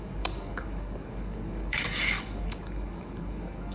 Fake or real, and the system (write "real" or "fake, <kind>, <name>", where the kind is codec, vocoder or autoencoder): fake, codec, DAC